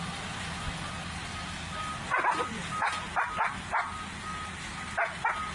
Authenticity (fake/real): real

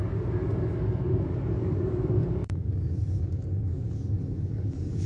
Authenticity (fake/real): fake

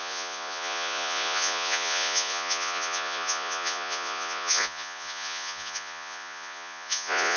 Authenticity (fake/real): fake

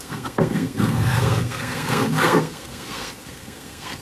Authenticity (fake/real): fake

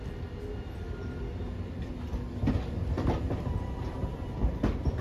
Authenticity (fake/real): real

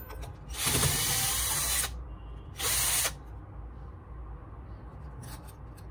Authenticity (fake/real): real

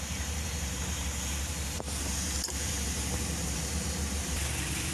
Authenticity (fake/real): fake